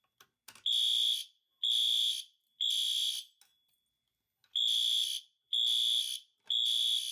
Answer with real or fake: real